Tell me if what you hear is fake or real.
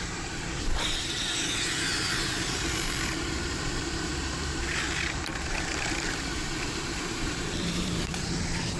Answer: fake